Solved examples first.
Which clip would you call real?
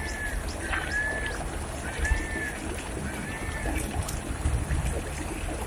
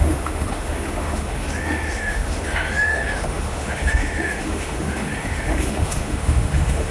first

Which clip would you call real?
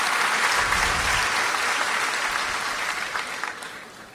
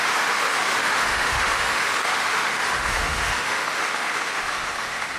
first